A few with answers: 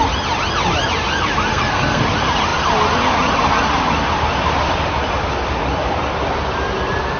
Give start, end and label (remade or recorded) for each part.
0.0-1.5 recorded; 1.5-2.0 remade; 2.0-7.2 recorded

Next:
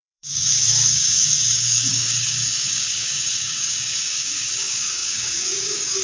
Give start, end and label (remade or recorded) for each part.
0.0-6.0 remade

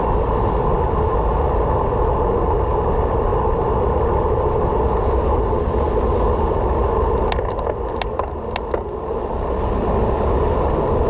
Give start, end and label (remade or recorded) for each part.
0.0-11.1 recorded

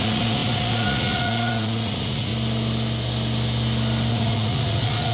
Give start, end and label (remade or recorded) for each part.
0.0-2.3 remade; 2.3-4.1 recorded; 4.1-5.1 remade

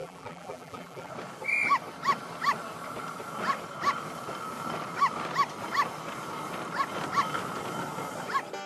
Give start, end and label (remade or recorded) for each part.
0.0-1.1 remade; 1.1-8.7 recorded

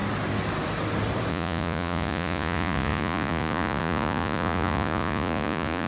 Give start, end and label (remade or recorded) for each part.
0.0-1.3 recorded; 1.3-5.9 remade

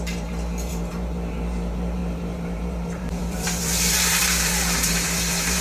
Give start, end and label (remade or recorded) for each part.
0.0-5.6 remade